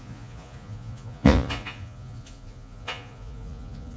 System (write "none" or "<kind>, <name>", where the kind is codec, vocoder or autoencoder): vocoder, Vocos